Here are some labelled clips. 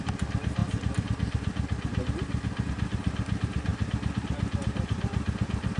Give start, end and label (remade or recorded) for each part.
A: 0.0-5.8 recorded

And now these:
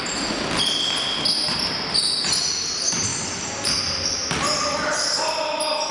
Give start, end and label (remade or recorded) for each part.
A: 0.0-5.9 recorded

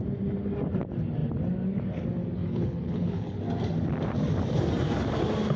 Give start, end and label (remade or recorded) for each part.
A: 0.0-2.4 recorded; 2.4-3.4 remade; 3.4-5.6 recorded

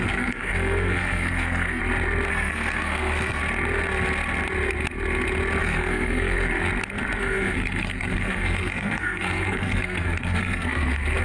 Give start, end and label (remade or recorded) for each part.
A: 0.0-1.8 remade; 1.8-2.3 recorded; 2.3-3.4 remade; 3.4-5.6 recorded; 5.6-6.5 remade; 6.5-7.2 recorded; 7.2-11.2 remade

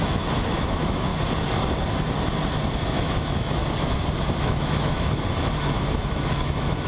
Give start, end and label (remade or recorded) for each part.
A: 0.0-1.1 remade; 1.1-2.9 recorded; 2.9-3.6 remade; 3.6-4.4 recorded; 4.4-6.9 remade

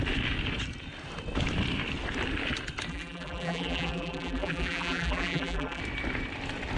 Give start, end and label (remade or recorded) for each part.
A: 0.0-2.9 recorded; 2.9-5.8 remade; 5.8-6.8 recorded

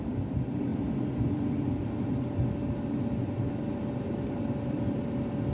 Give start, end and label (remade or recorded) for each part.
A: 0.0-5.5 recorded

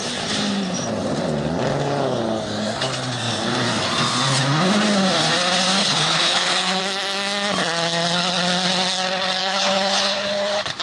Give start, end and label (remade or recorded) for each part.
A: 0.0-5.8 recorded; 5.8-6.8 remade; 6.8-9.4 recorded; 9.4-10.8 remade